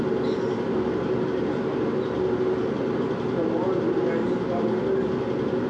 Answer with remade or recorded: recorded